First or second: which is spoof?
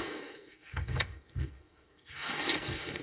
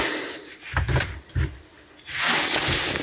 first